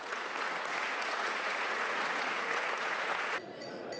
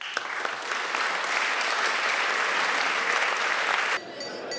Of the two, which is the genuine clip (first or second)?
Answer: second